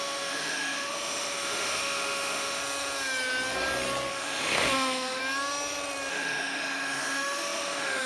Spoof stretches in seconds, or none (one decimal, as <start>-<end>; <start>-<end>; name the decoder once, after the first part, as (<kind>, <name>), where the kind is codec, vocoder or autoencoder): 0.0-2.6 (autoencoder, DAC-VAE); 4.1-5.2; 6.1-8.1